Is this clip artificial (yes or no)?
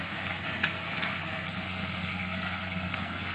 yes